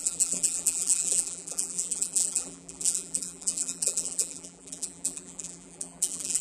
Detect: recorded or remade remade